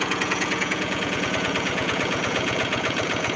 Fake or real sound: fake